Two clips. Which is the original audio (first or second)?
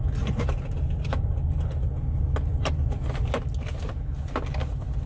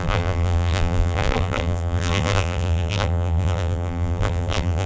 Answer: first